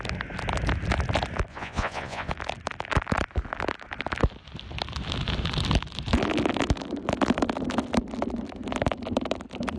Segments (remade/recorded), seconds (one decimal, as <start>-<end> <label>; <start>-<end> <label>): 0.0-1.5 recorded; 1.5-2.3 remade; 2.3-9.8 recorded